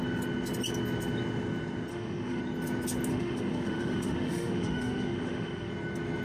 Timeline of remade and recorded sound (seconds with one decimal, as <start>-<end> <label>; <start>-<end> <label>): 0.0-1.9 recorded; 1.9-2.4 remade; 2.4-3.1 recorded; 3.1-5.7 remade; 5.7-6.2 recorded